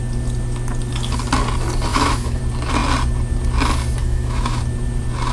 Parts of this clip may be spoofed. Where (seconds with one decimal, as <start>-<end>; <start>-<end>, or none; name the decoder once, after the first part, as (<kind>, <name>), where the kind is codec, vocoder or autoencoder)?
1.9-2.4 (autoencoder, DAC-VAE); 4.0-4.6